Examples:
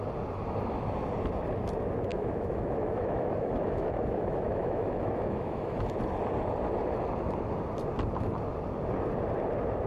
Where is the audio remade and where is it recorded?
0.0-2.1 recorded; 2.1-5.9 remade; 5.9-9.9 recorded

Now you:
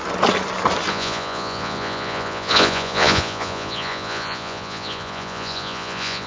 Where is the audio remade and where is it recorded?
0.0-0.9 recorded; 0.9-6.3 remade

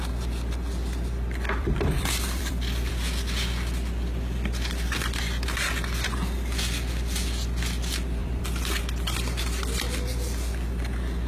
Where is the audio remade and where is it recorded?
0.0-1.6 recorded; 1.6-2.9 remade; 2.9-8.2 recorded; 8.2-8.8 remade; 8.8-11.3 recorded

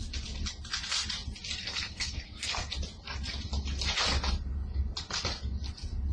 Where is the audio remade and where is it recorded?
0.0-1.6 recorded; 1.6-2.7 remade; 2.7-6.1 recorded

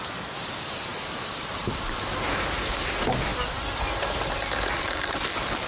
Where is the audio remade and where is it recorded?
0.0-0.9 recorded; 0.9-1.7 remade; 1.7-5.7 recorded

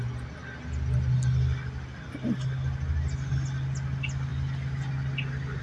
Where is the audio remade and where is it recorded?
0.0-5.6 recorded

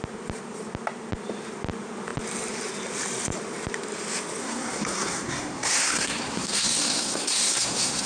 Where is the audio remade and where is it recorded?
0.0-4.4 recorded; 4.4-8.1 remade

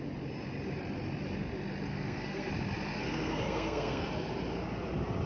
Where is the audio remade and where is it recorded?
0.0-1.9 recorded; 1.9-2.5 remade; 2.5-2.9 recorded; 2.9-4.1 remade; 4.1-5.3 recorded